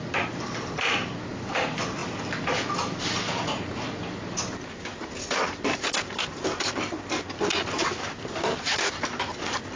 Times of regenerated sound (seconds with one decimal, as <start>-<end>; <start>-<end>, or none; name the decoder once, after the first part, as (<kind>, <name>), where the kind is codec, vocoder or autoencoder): none